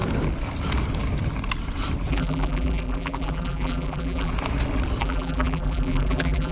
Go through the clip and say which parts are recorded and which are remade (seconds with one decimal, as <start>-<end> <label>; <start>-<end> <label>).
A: 0.0-2.1 recorded; 2.1-4.3 remade; 4.3-5.0 recorded; 5.0-6.5 remade